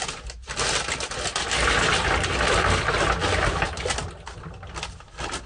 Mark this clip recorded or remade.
recorded